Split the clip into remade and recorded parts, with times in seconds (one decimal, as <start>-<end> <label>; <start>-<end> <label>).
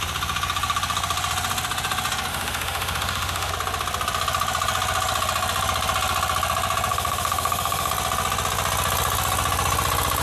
0.0-2.3 recorded; 2.3-3.5 remade; 3.5-6.9 recorded; 6.9-7.9 remade; 7.9-10.2 recorded